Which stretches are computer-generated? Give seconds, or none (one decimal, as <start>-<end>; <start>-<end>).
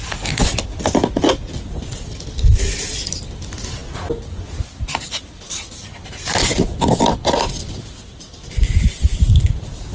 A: none